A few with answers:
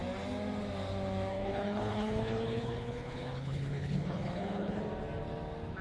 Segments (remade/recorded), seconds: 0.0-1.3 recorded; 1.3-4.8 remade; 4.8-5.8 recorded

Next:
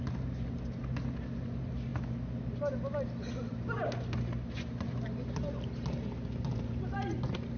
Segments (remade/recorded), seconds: 0.0-7.6 recorded